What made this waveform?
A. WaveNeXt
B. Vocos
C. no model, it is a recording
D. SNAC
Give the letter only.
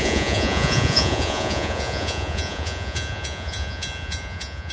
B